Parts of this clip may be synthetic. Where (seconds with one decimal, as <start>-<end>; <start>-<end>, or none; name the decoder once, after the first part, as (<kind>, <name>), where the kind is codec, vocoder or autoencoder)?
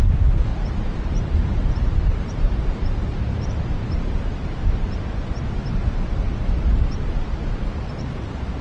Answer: 0.5-3.9 (vocoder, BigVGAN v2)